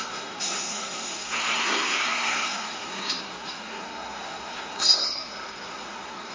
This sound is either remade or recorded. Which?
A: remade